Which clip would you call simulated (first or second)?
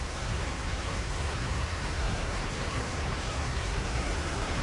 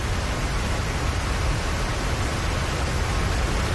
first